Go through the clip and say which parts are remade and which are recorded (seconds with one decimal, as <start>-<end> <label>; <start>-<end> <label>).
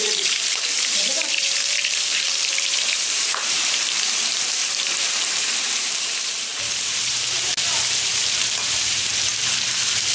0.0-6.5 remade; 6.5-7.1 recorded; 7.1-9.1 remade; 9.1-10.1 recorded